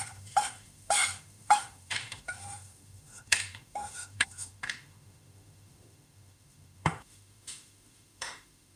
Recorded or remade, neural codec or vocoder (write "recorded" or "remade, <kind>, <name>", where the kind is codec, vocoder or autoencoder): remade, autoencoder, DAC-VAE